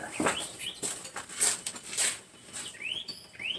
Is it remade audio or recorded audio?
recorded